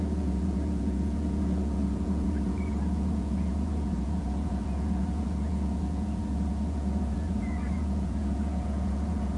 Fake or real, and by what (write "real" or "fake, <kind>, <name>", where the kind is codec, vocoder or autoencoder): fake, vocoder, Vocos